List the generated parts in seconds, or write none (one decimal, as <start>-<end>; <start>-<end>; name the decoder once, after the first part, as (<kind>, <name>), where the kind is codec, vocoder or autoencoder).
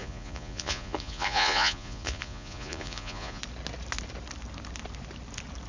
0.0-3.4 (vocoder, Vocos)